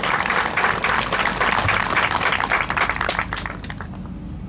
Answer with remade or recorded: recorded